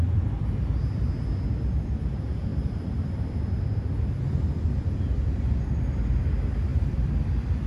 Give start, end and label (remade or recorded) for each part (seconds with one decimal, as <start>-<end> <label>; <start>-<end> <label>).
0.0-2.5 recorded; 2.5-5.1 remade; 5.1-6.7 recorded; 6.7-7.7 remade